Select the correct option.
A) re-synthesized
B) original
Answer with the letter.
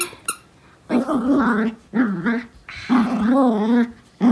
B